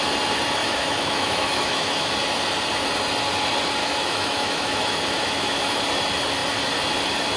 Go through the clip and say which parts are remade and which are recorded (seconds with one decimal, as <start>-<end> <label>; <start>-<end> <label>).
0.0-0.6 recorded; 0.6-2.1 remade; 2.1-3.8 recorded; 3.8-5.8 remade; 5.8-7.4 recorded